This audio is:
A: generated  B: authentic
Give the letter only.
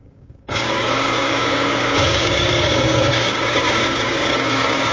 A